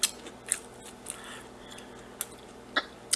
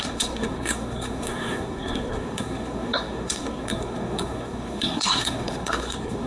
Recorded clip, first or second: first